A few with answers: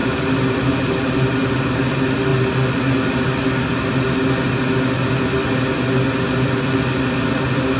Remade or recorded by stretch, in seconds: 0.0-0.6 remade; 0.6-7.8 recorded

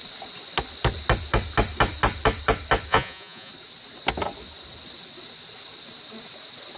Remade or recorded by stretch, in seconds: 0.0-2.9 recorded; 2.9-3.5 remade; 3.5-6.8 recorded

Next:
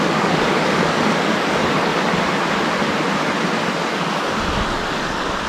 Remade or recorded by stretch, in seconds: 0.0-1.9 remade; 1.9-3.9 recorded; 3.9-5.5 remade